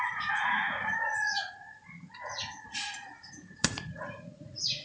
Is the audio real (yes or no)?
no